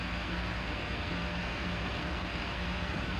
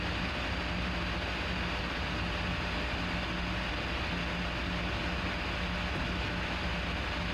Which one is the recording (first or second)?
second